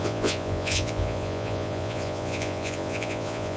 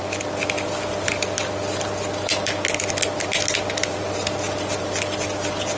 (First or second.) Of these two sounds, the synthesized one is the first